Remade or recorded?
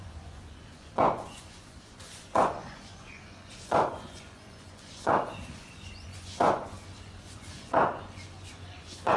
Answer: remade